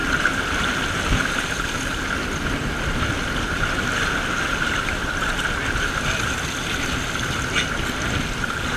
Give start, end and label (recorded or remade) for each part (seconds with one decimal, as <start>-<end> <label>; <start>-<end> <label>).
0.0-8.8 recorded